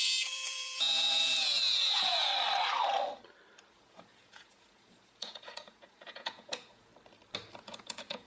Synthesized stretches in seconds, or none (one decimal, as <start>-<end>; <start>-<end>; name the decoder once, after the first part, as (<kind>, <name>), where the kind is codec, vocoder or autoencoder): 0.0-2.3 (vocoder, Vocos); 3.7-6.9; 7.6-8.3